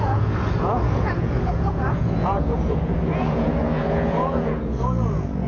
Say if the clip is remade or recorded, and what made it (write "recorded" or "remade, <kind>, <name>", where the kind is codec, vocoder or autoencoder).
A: remade, vocoder, Vocos